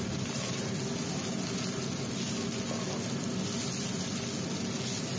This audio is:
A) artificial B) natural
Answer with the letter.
B